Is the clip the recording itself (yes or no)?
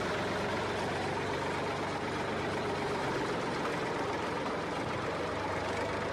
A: yes